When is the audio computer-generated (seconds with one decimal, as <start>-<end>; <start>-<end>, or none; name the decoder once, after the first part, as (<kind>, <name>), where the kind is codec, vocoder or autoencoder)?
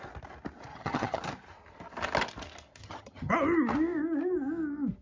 0.7-1.2 (vocoder, HiFi-GAN); 2.8-3.3